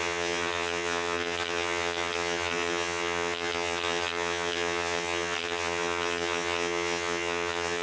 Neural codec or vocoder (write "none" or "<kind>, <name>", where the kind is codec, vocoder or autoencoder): vocoder, HiFi-GAN